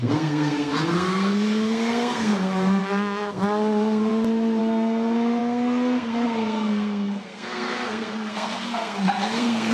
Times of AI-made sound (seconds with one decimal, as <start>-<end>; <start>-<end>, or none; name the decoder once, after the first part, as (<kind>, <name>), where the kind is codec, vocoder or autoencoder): 0.0-4.1 (codec, SNAC); 4.6-9.7